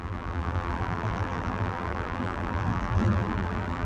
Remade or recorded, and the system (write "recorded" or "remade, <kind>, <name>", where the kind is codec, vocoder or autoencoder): remade, vocoder, BigVGAN v2